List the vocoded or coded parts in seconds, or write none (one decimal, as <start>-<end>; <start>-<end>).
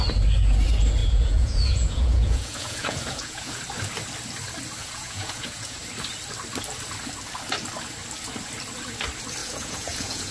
1.0-3.6; 4.8-5.8; 9.4-10.3